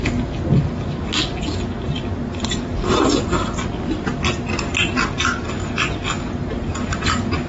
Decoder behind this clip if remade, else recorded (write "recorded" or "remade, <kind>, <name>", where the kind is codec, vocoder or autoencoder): recorded